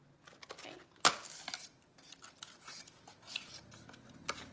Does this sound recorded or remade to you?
recorded